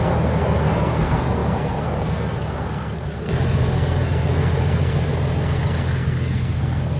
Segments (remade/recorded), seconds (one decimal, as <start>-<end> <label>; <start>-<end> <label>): 0.0-7.0 remade